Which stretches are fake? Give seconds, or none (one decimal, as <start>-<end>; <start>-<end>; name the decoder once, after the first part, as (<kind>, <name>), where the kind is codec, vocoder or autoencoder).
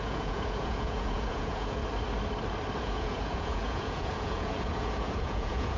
0.0-1.8 (vocoder, Vocos); 2.8-5.8